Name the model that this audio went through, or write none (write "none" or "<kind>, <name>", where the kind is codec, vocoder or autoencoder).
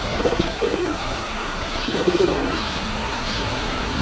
codec, SNAC